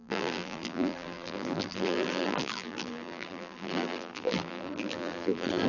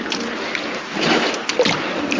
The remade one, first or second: first